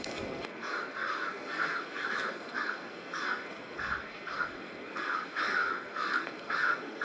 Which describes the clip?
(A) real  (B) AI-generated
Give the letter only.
B